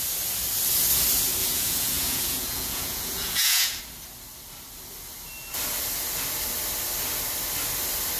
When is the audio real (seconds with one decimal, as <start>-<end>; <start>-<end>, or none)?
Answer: 0.0-1.4; 3.8-8.2